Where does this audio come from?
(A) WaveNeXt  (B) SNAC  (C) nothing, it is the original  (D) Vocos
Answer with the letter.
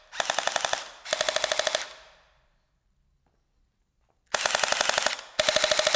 C